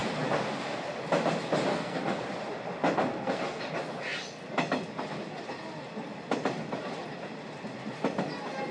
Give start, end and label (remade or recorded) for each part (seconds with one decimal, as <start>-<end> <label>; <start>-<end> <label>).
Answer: 0.0-1.7 recorded; 1.7-2.2 remade; 2.2-3.1 recorded; 3.1-3.6 remade; 3.6-8.7 recorded

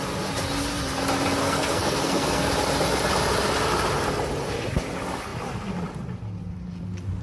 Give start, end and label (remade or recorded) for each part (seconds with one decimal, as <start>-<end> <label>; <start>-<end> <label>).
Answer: 0.0-1.4 recorded; 1.4-2.5 remade; 2.5-7.2 recorded

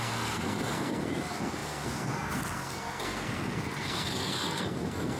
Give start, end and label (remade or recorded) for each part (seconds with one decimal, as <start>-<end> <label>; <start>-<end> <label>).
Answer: 0.0-5.2 remade

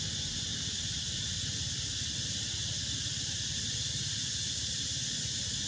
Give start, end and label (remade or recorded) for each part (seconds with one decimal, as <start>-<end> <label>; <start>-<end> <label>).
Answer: 0.0-5.7 recorded

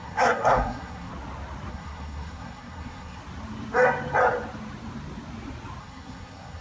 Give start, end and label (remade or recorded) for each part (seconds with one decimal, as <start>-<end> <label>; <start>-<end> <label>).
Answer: 0.0-1.1 remade; 1.1-1.7 recorded; 1.7-3.2 remade; 3.2-5.8 recorded; 5.8-6.6 remade

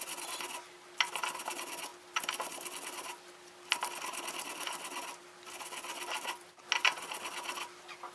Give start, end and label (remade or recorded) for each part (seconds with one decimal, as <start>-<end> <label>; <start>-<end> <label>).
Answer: 0.0-8.1 recorded